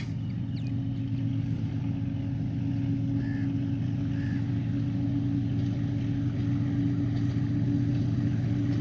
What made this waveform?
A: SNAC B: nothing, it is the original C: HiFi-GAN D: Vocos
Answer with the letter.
B